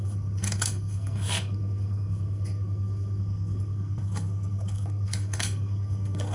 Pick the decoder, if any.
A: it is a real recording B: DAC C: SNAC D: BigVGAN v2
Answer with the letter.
C